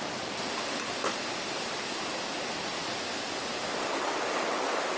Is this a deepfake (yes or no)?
no